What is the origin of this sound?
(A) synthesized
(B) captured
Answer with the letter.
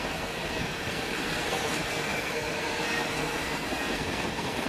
A